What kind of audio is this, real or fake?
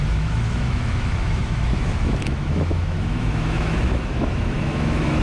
fake